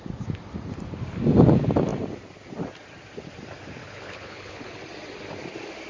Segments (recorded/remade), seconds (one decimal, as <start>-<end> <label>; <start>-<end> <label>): 0.0-3.8 recorded; 3.8-4.8 remade; 4.8-5.9 recorded